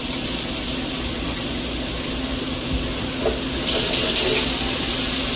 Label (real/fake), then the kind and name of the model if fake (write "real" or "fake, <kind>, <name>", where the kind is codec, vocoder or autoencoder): real